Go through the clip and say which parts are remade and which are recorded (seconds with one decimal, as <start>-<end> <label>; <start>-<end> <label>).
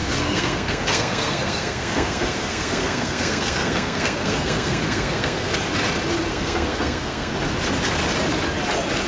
0.0-5.5 remade; 5.5-6.3 recorded; 6.3-7.3 remade; 7.3-9.1 recorded